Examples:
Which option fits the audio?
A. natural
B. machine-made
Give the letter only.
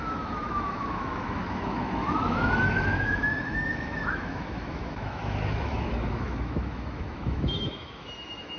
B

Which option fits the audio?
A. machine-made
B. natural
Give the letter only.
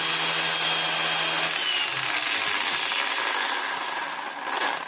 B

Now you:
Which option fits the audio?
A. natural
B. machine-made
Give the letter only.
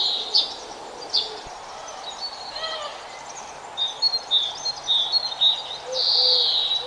A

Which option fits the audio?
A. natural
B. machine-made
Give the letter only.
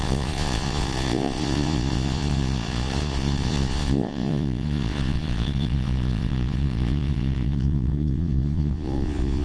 B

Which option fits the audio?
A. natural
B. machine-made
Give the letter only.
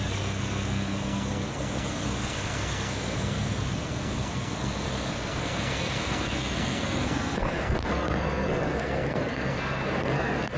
B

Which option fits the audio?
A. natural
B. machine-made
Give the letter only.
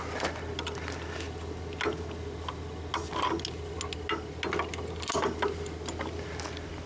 A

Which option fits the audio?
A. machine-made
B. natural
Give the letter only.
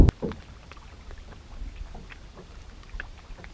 B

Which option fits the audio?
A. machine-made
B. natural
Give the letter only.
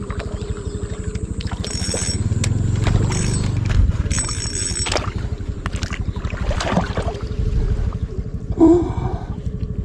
B